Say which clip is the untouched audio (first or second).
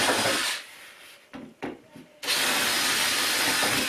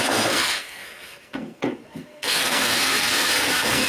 first